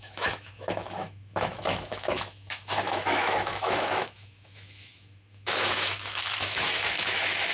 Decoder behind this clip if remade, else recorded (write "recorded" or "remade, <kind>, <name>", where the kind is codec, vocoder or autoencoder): remade, autoencoder, DAC-VAE